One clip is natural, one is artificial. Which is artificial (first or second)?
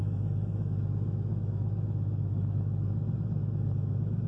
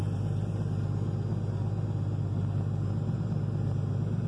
first